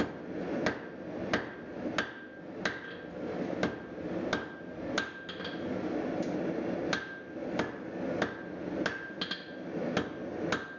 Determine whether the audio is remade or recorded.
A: recorded